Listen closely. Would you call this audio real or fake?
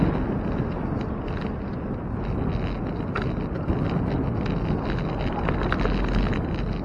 real